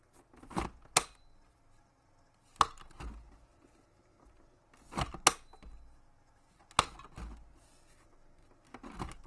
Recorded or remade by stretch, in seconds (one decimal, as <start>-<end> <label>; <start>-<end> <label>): 0.0-9.3 recorded